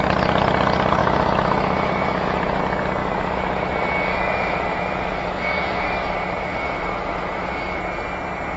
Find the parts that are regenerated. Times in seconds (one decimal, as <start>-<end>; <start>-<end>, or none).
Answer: 1.0-2.6; 3.0-7.8